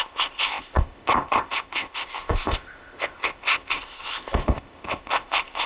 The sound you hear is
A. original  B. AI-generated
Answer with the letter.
B